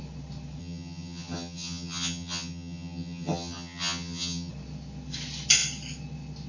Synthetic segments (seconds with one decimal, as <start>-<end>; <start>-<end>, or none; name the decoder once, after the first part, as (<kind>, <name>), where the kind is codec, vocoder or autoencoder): 0.6-4.5 (vocoder, HiFi-GAN)